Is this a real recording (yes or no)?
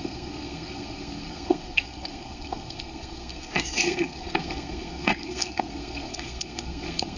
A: no